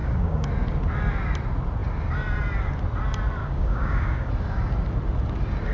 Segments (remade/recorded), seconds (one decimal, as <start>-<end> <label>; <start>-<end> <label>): 0.0-0.5 remade; 0.5-3.4 recorded; 3.4-4.3 remade; 4.3-5.7 recorded